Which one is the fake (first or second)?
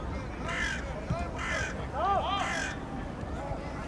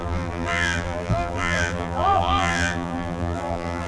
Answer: second